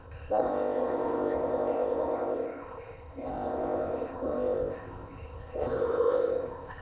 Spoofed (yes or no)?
yes